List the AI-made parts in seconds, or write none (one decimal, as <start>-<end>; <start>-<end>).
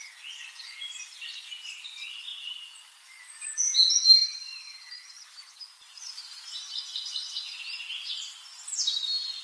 4.2-6.0